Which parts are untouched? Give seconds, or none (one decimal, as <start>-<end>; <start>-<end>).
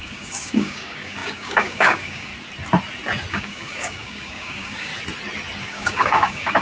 2.3-3.3; 4.9-5.6